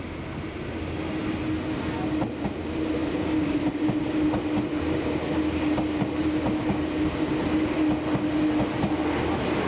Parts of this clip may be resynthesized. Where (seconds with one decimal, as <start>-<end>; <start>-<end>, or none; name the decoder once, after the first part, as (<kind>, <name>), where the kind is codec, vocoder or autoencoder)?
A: none